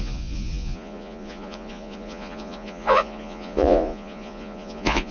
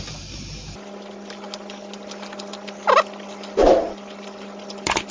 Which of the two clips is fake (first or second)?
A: first